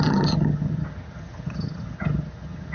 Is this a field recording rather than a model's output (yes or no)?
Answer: no